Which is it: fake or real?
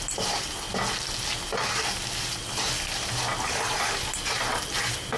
real